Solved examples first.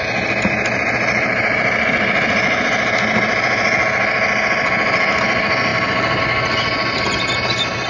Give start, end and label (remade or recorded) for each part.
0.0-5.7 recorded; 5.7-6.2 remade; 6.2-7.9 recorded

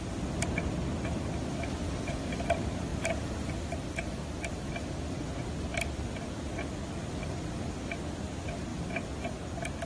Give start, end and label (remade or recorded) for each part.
0.0-2.9 recorded; 2.9-4.7 remade; 4.7-9.9 recorded

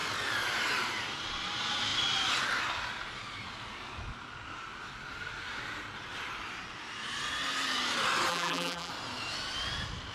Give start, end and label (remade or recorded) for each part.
0.0-8.3 recorded; 8.3-8.9 remade; 8.9-10.1 recorded

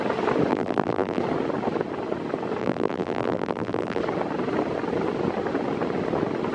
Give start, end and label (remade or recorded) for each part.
0.0-0.5 recorded; 0.5-1.2 remade; 1.2-2.6 recorded; 2.6-4.0 remade; 4.0-6.5 recorded

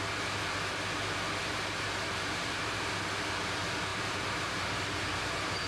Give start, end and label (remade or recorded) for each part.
0.0-1.4 recorded; 1.4-2.9 remade; 2.9-3.9 recorded; 3.9-4.6 remade; 4.6-5.7 recorded